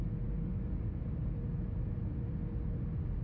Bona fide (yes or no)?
yes